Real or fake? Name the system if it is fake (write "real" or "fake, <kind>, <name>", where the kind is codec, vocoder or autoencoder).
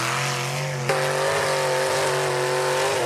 real